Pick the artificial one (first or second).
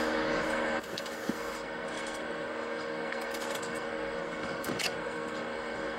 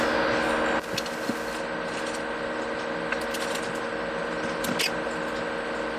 first